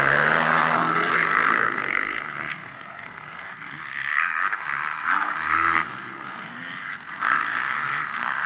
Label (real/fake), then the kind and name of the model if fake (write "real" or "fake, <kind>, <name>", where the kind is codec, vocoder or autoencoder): fake, codec, SNAC